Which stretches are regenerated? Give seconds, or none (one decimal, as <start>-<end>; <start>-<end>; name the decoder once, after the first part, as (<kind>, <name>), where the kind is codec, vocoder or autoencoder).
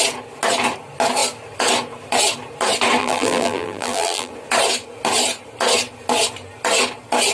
3.0-4.3 (vocoder, BigVGAN v2)